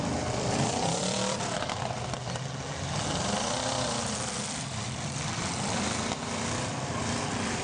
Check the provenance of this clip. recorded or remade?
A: remade